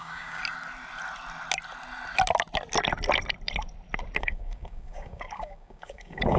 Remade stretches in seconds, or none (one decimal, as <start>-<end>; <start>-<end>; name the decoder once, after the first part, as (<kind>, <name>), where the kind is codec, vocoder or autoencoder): 0.0-0.4 (codec, DAC); 4.2-6.4